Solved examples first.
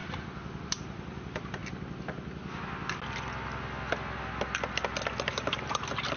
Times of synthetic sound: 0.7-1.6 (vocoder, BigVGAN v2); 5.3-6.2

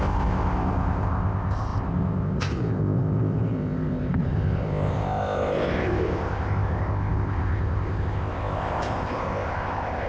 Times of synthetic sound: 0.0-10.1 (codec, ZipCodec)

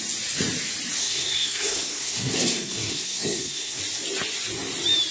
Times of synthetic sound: 1.0-3.8 (codec, SNAC)

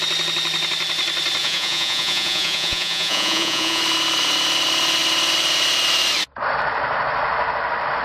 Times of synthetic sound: 1.4-3.8 (vocoder, Vocos)

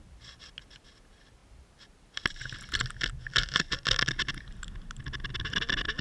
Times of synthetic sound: none

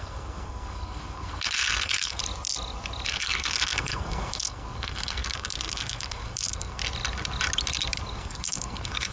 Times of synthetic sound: 0.0-2.2 (codec, SNAC); 3.1-6.8; 8.1-9.1

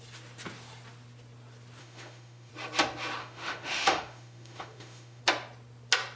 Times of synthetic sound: 1.8-2.5 (autoencoder, DAC-VAE); 3.2-5.2